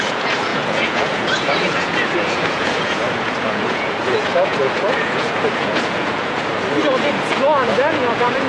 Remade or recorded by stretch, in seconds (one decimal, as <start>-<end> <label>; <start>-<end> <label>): 0.0-6.5 remade; 6.5-7.1 recorded; 7.1-8.5 remade